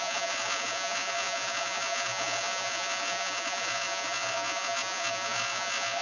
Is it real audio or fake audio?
fake